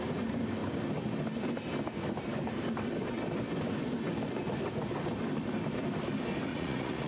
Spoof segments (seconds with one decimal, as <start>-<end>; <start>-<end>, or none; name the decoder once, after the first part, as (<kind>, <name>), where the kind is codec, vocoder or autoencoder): 6.5-7.1 (vocoder, Vocos)